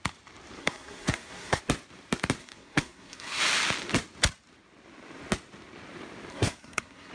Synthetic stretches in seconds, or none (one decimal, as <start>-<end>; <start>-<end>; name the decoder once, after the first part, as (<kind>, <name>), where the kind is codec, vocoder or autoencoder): 0.6-1.6 (codec, SNAC); 2.4-3.4; 6.3-7.1